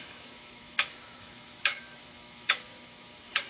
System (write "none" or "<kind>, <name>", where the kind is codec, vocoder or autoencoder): autoencoder, DAC-VAE